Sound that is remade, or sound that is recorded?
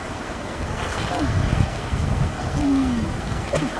remade